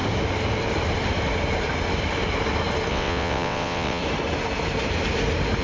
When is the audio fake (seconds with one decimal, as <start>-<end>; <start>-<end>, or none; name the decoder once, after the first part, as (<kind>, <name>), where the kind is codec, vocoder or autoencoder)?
2.9-4.0 (vocoder, WaveNeXt)